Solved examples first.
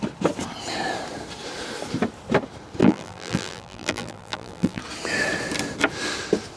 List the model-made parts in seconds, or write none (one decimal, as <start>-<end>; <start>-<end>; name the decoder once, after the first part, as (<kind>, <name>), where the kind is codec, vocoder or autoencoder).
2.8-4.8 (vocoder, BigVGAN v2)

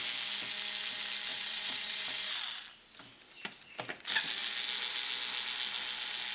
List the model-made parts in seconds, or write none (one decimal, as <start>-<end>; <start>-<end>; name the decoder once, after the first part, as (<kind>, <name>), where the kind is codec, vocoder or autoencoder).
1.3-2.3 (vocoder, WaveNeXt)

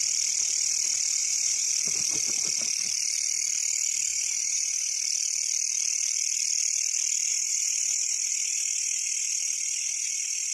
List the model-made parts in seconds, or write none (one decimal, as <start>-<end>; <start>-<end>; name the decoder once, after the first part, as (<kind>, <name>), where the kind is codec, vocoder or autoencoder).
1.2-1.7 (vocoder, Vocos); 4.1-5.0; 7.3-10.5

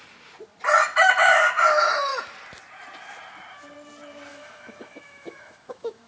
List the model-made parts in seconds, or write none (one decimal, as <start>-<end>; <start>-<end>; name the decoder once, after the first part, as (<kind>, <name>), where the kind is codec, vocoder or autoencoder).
4.3-6.1 (autoencoder, DAC-VAE)

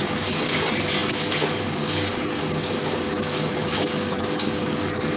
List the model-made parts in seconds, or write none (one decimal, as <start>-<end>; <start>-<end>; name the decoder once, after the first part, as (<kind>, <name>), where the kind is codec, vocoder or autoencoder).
0.0-5.2 (codec, DAC)

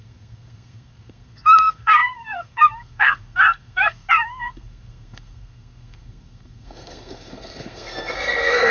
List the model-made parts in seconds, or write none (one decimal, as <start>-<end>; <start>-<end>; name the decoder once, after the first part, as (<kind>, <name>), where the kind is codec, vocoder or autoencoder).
0.0-8.7 (codec, SNAC)

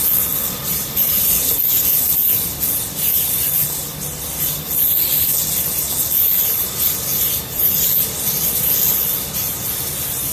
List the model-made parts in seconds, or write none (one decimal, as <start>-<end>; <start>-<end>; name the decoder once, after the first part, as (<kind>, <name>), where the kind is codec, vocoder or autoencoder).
0.6-1.3 (vocoder, BigVGAN v2); 7.1-7.7

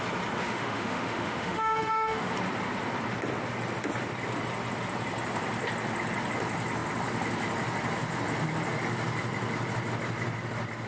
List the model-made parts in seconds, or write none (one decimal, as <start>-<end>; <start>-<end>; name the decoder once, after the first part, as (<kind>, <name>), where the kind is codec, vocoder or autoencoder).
0.4-2.3 (autoencoder, DAC-VAE)